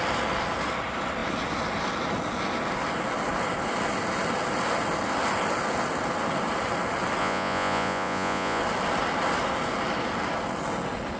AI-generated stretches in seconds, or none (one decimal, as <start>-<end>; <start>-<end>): 7.2-8.6